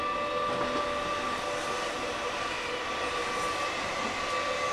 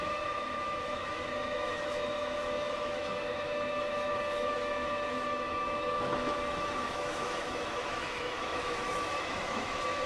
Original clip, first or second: first